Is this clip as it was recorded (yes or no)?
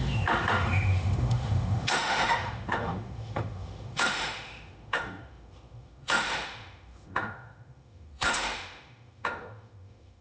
no